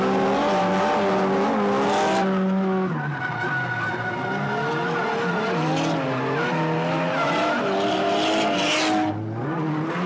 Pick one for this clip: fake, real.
real